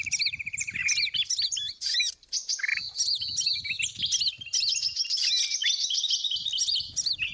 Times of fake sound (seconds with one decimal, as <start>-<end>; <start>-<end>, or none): none